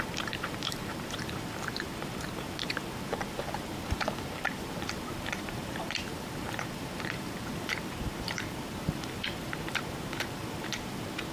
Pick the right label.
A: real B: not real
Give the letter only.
B